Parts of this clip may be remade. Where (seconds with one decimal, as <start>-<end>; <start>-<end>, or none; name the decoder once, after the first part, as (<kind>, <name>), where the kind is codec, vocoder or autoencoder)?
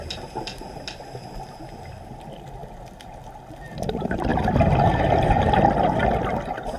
none